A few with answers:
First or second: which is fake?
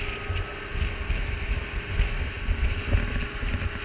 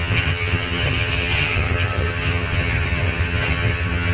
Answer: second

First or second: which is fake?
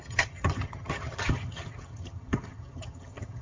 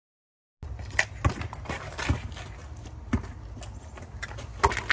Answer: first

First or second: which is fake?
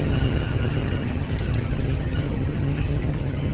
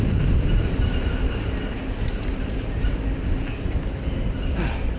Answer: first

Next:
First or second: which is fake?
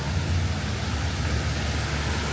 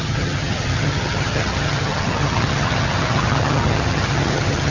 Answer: second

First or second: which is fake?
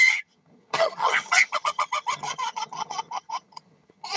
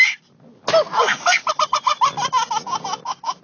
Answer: first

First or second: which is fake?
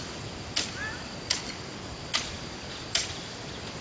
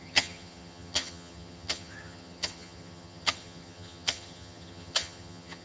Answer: second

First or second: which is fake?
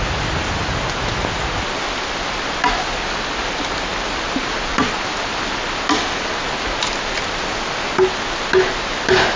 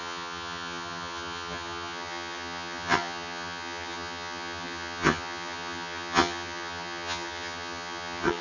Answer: second